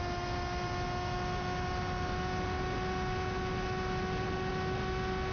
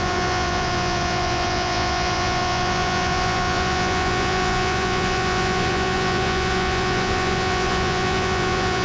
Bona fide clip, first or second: first